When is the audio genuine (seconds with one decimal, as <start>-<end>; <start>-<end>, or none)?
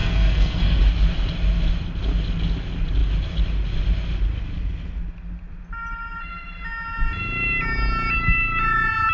0.8-9.1